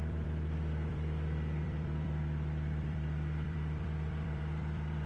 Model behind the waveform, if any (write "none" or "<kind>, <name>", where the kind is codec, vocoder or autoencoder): vocoder, BigVGAN v2